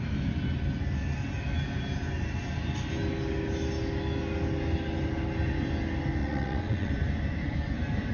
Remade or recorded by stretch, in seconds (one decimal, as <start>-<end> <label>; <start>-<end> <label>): 0.0-6.2 recorded; 6.2-6.9 remade; 6.9-8.1 recorded